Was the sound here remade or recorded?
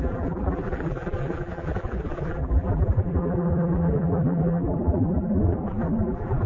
remade